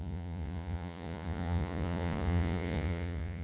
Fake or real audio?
fake